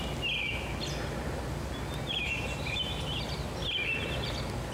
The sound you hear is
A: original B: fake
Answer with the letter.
A